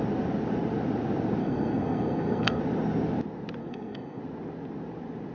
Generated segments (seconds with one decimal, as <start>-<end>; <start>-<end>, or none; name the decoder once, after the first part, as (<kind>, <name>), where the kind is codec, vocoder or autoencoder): 1.4-2.6 (codec, SNAC); 3.6-4.2